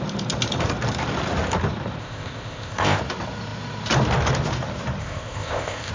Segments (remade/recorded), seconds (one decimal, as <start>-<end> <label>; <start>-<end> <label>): 0.0-2.0 recorded; 2.0-3.0 remade; 3.0-5.0 recorded; 5.0-5.9 remade